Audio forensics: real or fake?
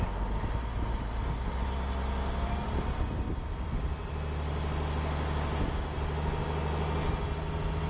real